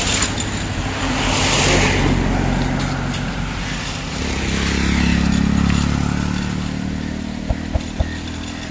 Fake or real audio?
real